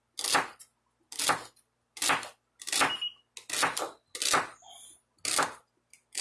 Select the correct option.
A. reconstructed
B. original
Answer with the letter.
B